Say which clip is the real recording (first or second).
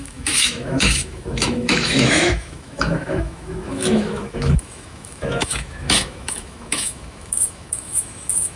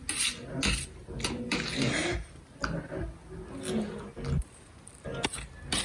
second